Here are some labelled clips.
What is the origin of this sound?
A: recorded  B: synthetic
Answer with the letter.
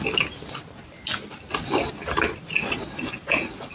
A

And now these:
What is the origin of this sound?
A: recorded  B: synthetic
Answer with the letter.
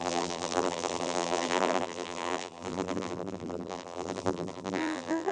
B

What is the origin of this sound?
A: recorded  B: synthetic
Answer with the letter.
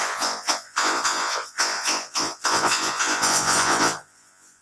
B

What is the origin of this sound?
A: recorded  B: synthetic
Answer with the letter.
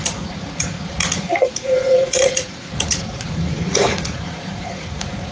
B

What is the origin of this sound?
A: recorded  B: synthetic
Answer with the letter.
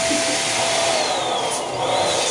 A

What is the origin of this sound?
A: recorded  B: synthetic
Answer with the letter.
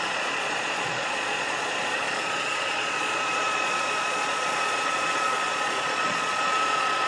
B